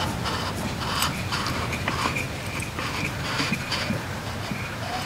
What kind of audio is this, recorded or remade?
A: remade